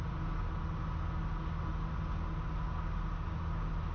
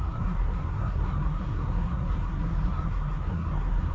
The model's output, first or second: second